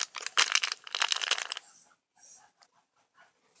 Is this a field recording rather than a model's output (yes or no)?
yes